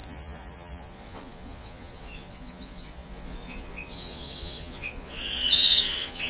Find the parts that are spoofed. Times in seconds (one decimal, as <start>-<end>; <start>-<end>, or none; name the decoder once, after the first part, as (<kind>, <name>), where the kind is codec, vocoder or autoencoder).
0.0-6.3 (vocoder, Vocos)